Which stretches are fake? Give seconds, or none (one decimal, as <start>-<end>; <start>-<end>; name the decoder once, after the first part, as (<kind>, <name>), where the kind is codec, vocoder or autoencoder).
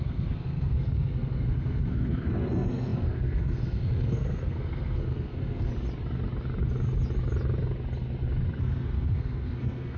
0.0-5.7 (codec, SNAC); 8.6-10.0